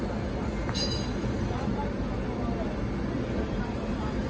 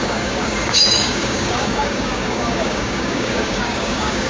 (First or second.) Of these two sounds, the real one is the first